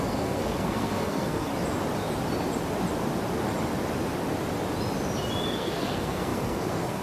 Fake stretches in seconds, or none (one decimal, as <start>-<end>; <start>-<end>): 0.0-1.5; 5.5-7.0